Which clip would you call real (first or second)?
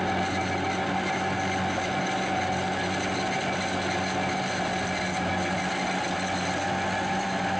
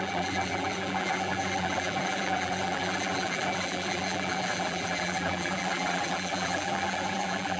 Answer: first